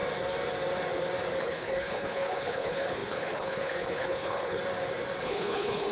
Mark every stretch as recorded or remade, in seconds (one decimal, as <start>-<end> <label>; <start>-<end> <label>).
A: 0.0-1.4 recorded; 1.4-4.6 remade; 4.6-5.2 recorded; 5.2-5.9 remade